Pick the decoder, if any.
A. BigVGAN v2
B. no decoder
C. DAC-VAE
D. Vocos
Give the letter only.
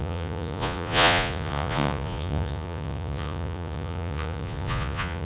D